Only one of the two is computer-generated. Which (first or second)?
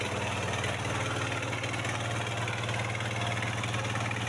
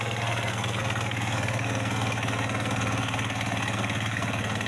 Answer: second